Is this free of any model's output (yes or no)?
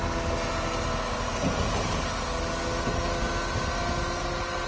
yes